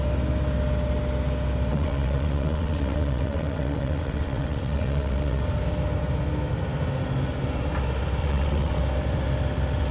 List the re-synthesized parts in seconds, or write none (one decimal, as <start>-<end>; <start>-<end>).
1.7-5.4; 8.2-8.8